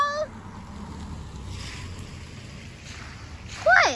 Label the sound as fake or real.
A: real